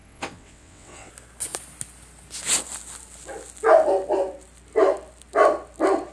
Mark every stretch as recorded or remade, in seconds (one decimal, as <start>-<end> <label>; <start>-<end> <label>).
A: 0.0-1.1 remade; 1.1-6.1 recorded